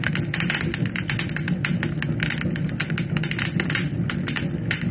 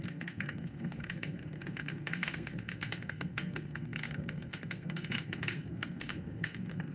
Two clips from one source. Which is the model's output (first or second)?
second